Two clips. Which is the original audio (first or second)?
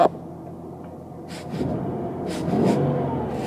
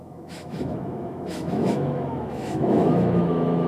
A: first